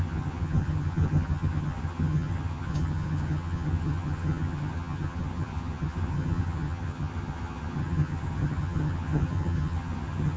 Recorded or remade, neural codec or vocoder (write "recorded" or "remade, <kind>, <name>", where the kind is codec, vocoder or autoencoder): remade, vocoder, HiFi-GAN